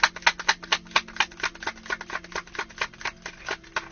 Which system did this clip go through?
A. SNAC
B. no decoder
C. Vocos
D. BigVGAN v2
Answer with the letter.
B